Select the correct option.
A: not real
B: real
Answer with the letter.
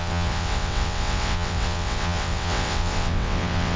A